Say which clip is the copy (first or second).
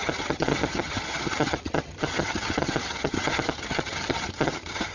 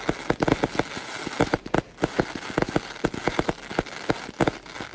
first